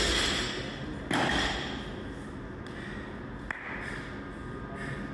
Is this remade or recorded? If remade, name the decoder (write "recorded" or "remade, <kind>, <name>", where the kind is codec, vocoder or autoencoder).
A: recorded